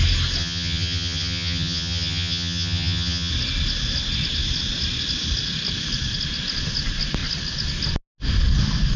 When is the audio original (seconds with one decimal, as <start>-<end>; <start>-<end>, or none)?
0.0-0.4; 3.3-9.0